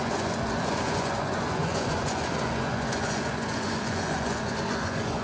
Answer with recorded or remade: remade